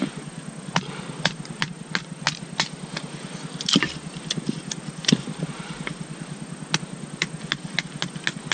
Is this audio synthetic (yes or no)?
no